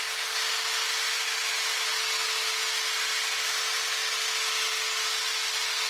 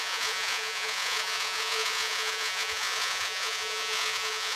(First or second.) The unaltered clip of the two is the first